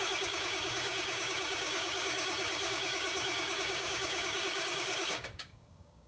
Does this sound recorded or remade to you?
remade